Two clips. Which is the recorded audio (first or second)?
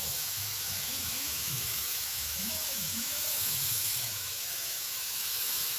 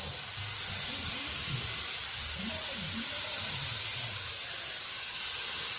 second